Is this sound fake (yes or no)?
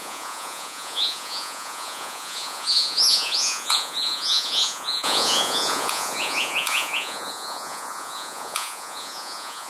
yes